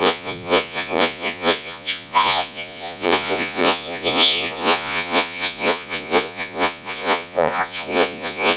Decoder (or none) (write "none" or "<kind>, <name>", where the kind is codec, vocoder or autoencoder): vocoder, Vocos